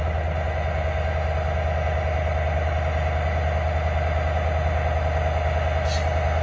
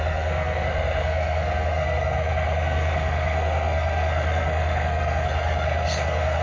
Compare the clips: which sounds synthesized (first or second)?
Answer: second